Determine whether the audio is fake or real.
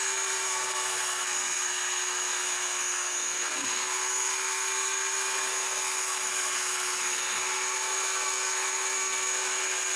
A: fake